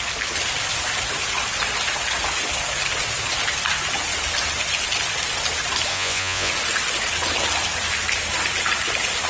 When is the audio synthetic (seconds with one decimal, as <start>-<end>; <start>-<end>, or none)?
5.9-6.5